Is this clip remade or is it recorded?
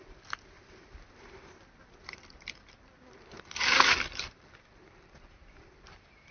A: remade